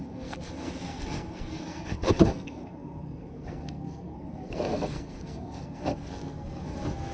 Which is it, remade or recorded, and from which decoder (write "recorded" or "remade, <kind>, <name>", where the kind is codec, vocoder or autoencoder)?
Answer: remade, codec, SNAC